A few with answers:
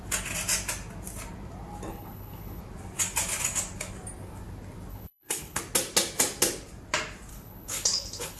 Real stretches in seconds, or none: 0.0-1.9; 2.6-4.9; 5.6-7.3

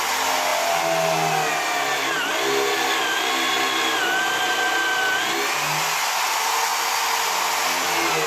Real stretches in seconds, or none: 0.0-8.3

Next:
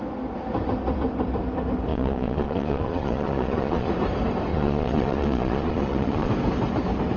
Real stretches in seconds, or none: 0.0-1.9; 3.9-4.5; 6.3-7.2